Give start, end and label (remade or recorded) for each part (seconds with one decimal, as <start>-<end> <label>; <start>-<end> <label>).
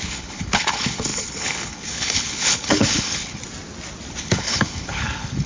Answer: 0.0-3.4 remade; 3.4-4.2 recorded; 4.2-5.5 remade